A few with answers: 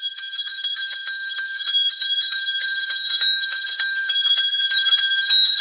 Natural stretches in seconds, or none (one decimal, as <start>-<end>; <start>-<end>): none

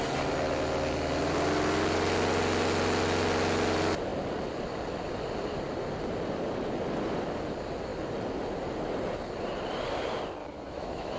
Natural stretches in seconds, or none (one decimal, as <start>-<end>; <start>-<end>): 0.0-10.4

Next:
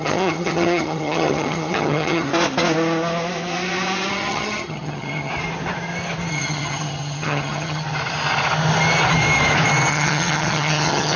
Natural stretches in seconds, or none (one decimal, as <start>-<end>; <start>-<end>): 2.3-4.1; 5.3-6.3; 7.8-9.9

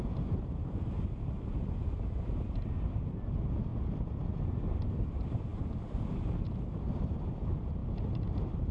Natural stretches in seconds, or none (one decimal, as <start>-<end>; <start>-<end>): 3.7-4.8

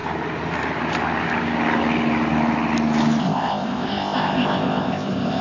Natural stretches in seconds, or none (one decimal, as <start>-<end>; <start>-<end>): 0.0-3.2

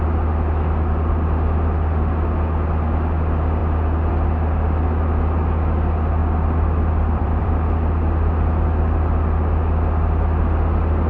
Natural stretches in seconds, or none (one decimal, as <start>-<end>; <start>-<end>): 0.0-3.6; 4.1-6.2; 7.5-11.1

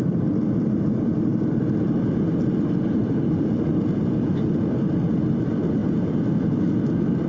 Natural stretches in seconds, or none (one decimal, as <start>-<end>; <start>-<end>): 0.0-7.3